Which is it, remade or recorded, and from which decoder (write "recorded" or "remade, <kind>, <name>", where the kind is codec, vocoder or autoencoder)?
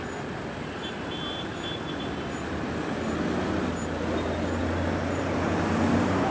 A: recorded